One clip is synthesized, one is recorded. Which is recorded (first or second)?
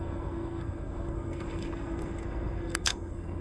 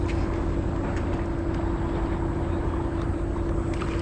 second